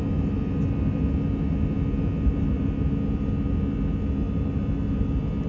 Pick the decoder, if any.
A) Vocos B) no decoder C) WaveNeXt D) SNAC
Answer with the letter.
B